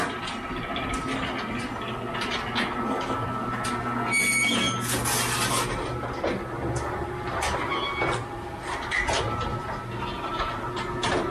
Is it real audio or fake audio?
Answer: real